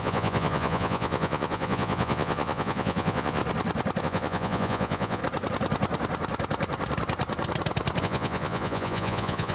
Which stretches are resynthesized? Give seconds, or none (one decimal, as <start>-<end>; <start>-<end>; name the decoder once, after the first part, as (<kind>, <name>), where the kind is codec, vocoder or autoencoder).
0.0-3.4 (vocoder, Vocos); 4.0-5.2; 8.0-9.5